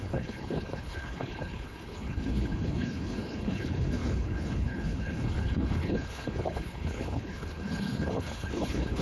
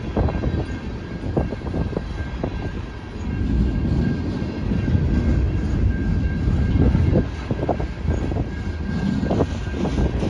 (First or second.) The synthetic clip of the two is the first